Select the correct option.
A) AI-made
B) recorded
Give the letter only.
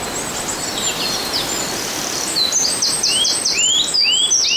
B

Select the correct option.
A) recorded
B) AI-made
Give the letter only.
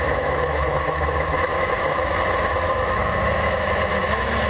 B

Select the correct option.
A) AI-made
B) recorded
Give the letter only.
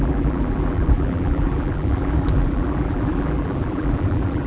A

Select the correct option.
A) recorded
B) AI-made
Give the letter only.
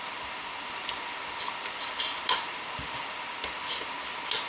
A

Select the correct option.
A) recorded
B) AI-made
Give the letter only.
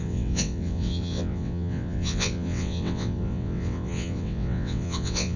B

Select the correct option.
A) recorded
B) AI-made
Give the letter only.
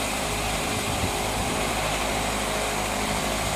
B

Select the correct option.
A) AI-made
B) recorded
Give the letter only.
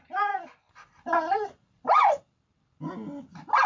B